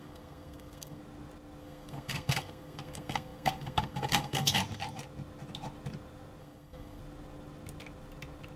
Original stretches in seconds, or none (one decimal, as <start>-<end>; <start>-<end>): 1.0-1.6; 4.6-6.4; 7.0-8.6